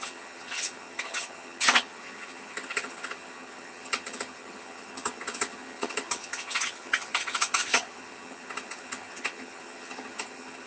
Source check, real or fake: fake